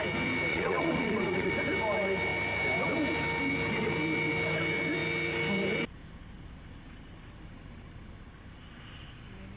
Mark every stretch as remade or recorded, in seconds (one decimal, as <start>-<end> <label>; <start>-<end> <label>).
0.0-0.5 recorded; 0.5-1.5 remade; 1.5-9.6 recorded